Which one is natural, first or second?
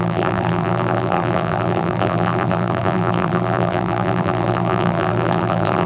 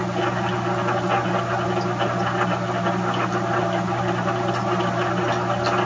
second